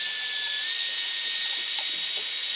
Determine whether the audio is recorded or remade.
recorded